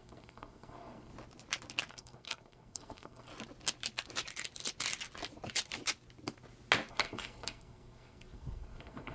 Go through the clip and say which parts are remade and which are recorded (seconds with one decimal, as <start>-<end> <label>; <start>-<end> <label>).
0.0-1.1 remade; 1.1-1.9 recorded; 1.9-3.3 remade; 3.3-6.9 recorded; 6.9-9.1 remade